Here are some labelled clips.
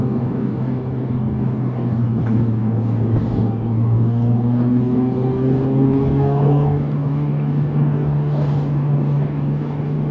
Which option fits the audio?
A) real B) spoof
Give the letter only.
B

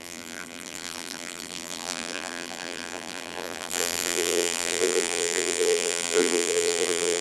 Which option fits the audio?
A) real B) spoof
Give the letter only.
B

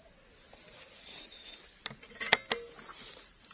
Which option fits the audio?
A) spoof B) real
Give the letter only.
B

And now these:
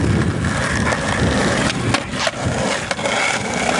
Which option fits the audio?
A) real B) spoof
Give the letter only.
A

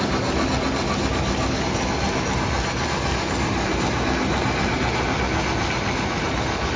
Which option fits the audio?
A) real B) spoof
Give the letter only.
A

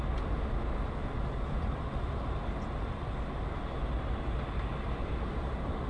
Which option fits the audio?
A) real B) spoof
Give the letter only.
A